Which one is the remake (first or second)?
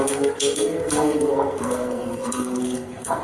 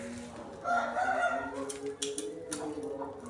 first